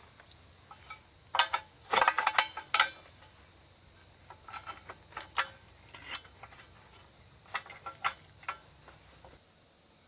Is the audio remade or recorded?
recorded